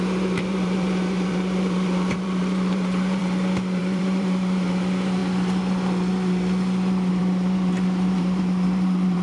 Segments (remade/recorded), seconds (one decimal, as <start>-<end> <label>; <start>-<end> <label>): 0.0-3.2 remade; 3.2-3.8 recorded; 3.8-5.2 remade; 5.2-7.2 recorded; 7.2-9.2 remade